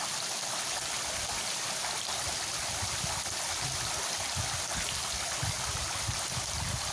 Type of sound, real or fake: real